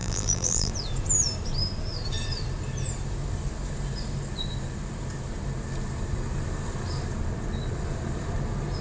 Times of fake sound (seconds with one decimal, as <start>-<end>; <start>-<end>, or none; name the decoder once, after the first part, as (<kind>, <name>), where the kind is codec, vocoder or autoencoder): 0.0-0.7 (vocoder, BigVGAN v2)